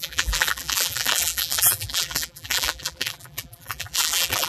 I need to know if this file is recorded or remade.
remade